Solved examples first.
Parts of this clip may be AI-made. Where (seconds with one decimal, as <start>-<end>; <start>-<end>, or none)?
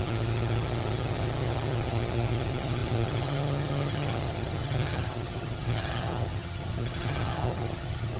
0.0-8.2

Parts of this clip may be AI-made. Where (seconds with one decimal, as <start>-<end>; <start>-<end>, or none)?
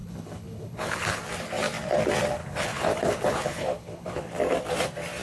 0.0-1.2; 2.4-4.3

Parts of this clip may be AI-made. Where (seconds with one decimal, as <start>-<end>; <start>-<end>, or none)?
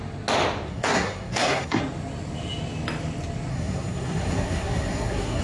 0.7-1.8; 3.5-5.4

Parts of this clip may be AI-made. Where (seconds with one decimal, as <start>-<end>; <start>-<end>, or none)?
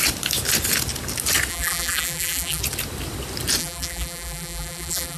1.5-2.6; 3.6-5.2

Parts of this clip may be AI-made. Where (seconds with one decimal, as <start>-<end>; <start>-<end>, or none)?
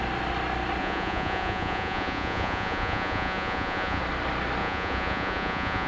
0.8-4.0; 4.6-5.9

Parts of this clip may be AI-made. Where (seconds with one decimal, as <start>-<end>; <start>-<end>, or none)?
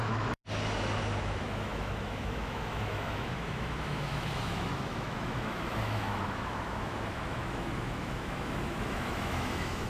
0.0-0.4; 1.2-9.9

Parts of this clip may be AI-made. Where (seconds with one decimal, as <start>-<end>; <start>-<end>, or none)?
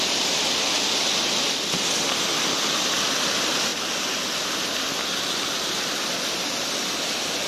none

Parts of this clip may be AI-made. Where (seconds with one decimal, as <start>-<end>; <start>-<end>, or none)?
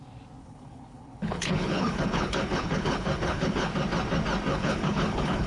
0.4-3.7; 4.5-5.5